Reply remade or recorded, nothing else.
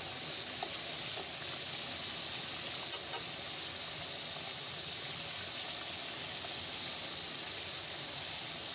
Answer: recorded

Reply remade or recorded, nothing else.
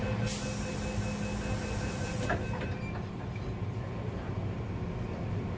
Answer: recorded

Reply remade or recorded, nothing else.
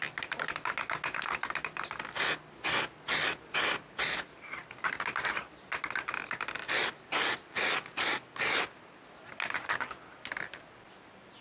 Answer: recorded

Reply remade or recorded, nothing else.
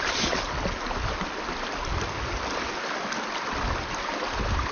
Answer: recorded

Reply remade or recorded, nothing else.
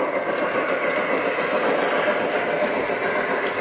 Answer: recorded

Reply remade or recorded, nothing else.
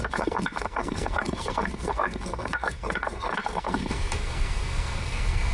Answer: remade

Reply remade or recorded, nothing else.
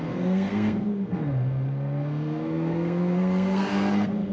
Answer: remade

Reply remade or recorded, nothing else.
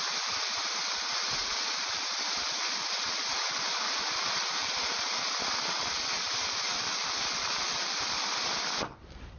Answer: recorded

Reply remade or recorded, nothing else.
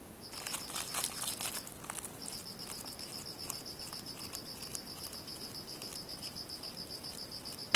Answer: recorded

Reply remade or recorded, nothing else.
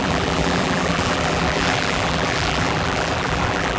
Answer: remade